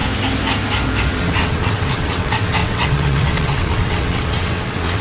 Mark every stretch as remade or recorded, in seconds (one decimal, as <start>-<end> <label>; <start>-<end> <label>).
0.0-1.1 recorded; 1.1-5.0 remade